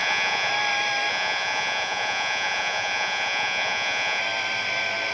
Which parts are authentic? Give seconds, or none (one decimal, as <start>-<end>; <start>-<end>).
0.5-1.1; 4.2-5.1